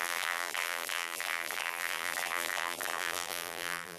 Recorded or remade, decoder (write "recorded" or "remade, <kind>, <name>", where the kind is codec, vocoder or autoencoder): remade, vocoder, BigVGAN v2